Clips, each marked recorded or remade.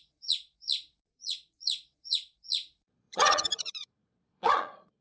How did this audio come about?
remade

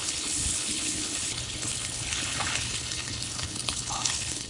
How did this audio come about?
remade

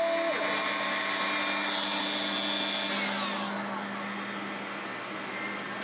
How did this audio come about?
recorded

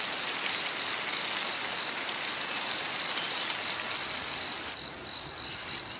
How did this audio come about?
recorded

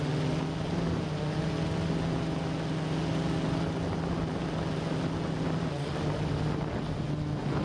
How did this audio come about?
recorded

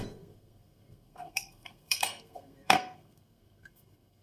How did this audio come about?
remade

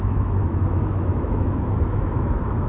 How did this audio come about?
remade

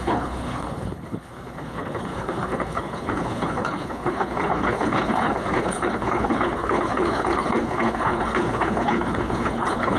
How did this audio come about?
remade